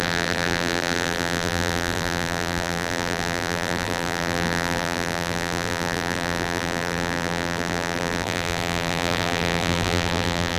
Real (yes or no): no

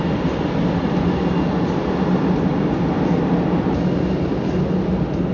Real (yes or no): yes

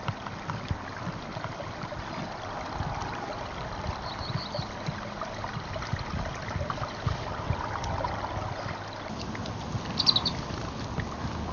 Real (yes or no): yes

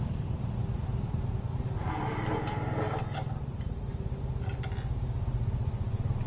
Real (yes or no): yes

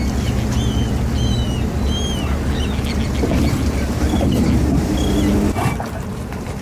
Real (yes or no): yes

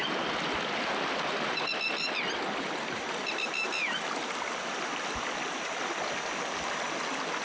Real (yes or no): yes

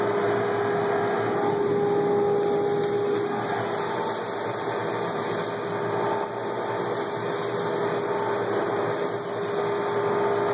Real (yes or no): yes